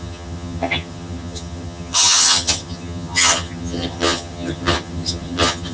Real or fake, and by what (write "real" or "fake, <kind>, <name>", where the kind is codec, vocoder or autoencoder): fake, vocoder, HiFi-GAN